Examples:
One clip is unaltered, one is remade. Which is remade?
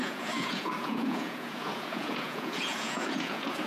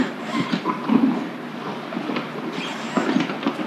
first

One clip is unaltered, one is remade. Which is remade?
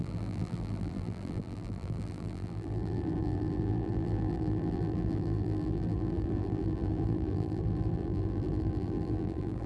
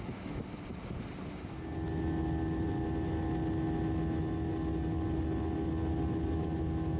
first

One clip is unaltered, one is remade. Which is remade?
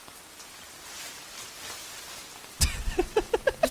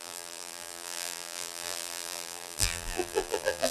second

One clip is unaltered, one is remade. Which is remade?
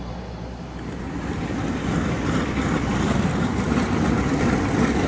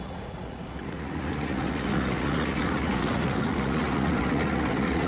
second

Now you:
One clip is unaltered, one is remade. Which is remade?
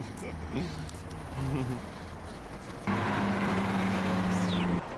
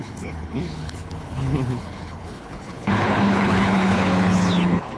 second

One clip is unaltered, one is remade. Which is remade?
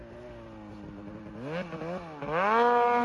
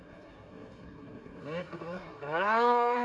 second